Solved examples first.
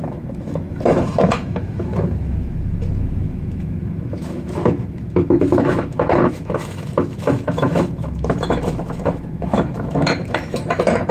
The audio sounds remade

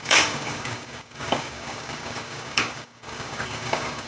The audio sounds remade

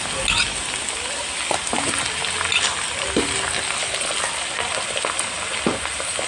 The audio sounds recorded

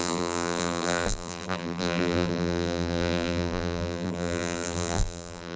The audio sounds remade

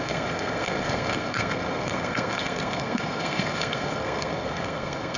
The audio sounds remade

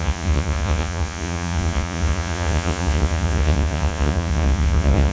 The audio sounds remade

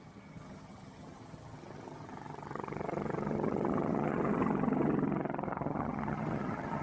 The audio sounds remade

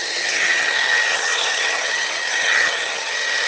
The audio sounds remade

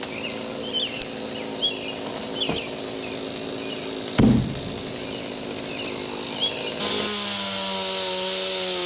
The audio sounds recorded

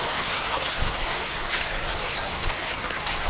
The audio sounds remade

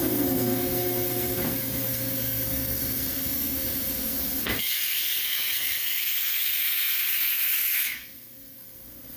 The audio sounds remade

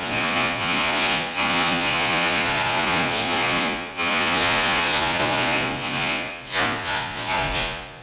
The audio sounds remade